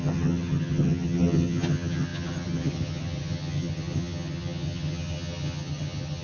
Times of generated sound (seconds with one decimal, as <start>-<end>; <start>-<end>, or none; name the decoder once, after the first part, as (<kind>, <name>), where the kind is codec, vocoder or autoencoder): 0.0-6.2 (vocoder, HiFi-GAN)